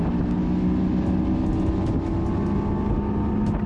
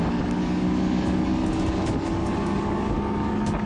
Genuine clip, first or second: first